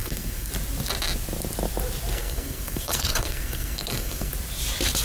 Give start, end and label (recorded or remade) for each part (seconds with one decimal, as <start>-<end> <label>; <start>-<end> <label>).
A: 0.0-0.5 remade; 0.5-2.1 recorded; 2.1-4.3 remade; 4.3-5.0 recorded